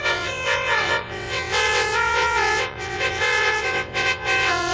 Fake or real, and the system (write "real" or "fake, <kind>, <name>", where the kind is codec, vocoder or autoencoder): fake, vocoder, WaveNeXt